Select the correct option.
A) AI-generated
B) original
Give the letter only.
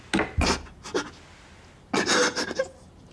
B